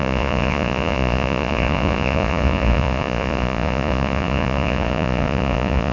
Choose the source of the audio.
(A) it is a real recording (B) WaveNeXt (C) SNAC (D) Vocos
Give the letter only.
D